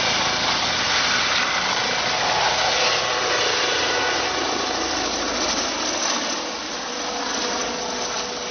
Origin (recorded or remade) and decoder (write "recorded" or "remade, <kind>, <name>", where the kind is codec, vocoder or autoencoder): recorded